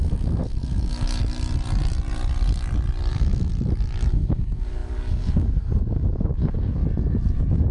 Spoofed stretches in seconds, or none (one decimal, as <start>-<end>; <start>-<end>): 0.0-1.2; 3.1-3.5; 4.1-6.8